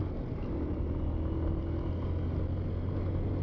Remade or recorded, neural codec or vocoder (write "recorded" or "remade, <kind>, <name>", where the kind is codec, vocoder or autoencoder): recorded